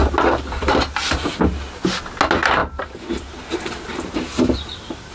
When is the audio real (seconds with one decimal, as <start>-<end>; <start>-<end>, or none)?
0.0-5.1